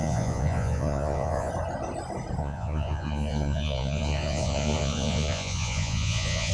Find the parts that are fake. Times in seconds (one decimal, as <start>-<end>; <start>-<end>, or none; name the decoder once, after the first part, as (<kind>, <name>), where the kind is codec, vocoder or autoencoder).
0.0-1.5 (vocoder, Vocos); 2.4-6.5

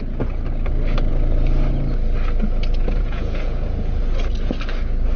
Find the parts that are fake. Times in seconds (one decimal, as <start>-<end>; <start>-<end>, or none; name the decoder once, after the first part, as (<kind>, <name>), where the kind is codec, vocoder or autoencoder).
2.8-4.0 (vocoder, Vocos)

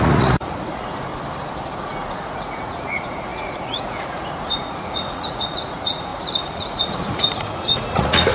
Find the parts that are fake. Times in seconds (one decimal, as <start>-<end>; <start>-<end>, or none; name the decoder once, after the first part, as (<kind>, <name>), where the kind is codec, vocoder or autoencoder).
0.0-1.1 (vocoder, Vocos); 1.7-8.3

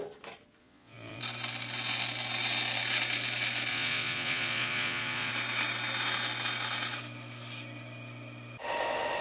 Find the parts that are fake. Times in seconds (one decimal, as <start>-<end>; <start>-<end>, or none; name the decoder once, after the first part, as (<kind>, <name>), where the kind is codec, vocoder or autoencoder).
0.6-1.2 (vocoder, Vocos); 3.7-5.3

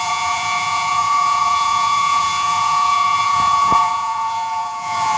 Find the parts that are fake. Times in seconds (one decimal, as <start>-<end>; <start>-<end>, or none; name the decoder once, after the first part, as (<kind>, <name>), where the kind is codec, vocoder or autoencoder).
0.0-5.2 (vocoder, Vocos)

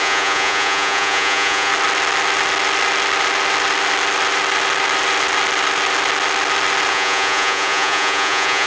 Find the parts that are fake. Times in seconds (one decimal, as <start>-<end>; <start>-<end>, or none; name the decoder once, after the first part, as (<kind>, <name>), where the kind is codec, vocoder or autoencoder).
0.0-1.7 (vocoder, Vocos); 6.9-8.7